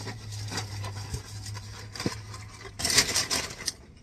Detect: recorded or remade recorded